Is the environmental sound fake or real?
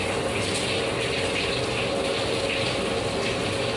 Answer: real